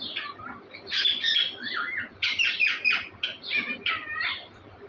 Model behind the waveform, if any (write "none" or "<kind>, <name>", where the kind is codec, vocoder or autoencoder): none